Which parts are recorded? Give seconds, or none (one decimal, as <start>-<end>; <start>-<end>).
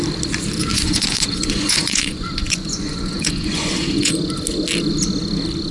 0.0-0.7; 4.1-5.7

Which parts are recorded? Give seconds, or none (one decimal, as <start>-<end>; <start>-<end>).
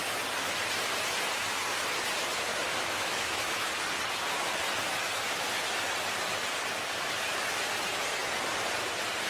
0.0-2.5; 3.7-9.3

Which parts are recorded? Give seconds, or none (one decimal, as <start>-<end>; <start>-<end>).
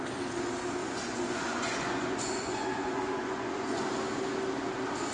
0.0-0.8; 3.9-5.1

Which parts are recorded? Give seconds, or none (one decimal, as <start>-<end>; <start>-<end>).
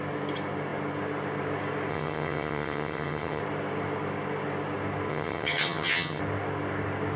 0.0-1.9; 3.4-5.1; 6.2-7.2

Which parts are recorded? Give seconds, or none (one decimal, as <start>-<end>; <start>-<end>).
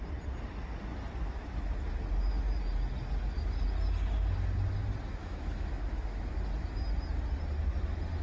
0.0-5.2; 6.2-8.2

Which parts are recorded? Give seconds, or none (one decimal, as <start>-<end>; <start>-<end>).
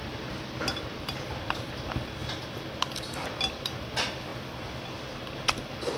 2.2-2.7; 4.3-5.3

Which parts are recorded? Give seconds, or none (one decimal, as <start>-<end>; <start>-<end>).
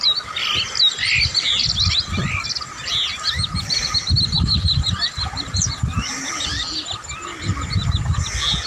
0.0-7.3; 7.9-8.7